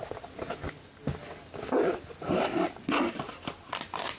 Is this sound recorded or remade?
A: recorded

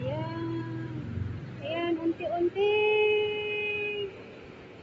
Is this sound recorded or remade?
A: recorded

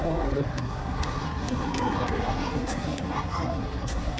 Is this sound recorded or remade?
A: remade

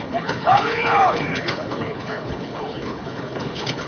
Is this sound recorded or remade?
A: remade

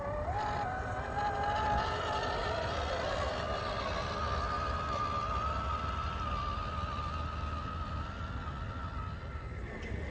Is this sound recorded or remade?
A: recorded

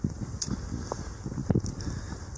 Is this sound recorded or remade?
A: recorded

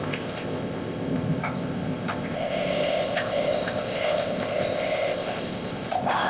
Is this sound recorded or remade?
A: remade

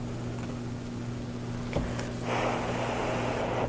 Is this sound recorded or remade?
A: recorded